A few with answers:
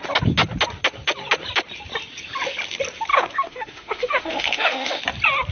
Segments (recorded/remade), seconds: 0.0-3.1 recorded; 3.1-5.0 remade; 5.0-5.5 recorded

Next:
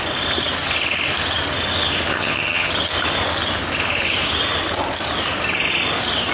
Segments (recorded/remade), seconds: 0.0-2.1 recorded; 2.1-2.7 remade; 2.7-6.3 recorded

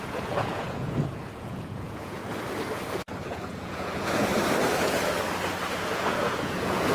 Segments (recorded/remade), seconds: 0.0-2.2 remade; 2.2-3.0 recorded; 3.0-4.3 remade; 4.3-5.7 recorded; 5.7-6.9 remade

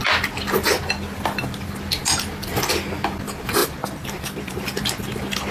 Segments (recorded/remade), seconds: 0.0-5.5 recorded

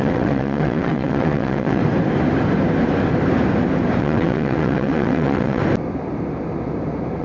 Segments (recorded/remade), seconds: 0.0-1.8 remade; 1.8-4.0 recorded; 4.0-5.6 remade; 5.6-7.2 recorded

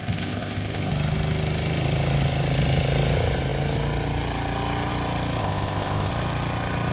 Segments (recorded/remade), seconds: 0.0-0.9 remade; 0.9-5.4 recorded; 5.4-6.1 remade; 6.1-6.9 recorded